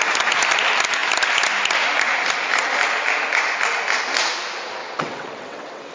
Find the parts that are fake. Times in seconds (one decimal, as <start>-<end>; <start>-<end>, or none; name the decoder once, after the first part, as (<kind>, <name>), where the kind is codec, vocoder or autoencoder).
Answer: 4.8-5.9 (vocoder, WaveNeXt)